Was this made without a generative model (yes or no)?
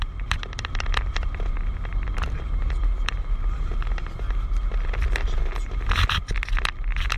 yes